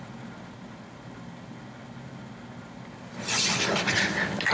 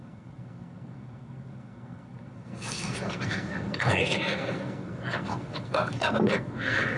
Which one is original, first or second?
first